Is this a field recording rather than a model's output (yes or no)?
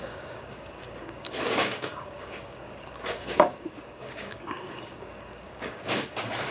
no